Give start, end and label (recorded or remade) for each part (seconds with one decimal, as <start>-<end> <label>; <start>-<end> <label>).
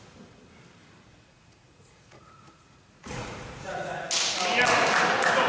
0.0-0.8 recorded; 0.8-4.1 remade; 4.1-5.5 recorded